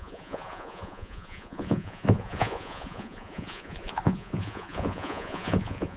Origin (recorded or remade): remade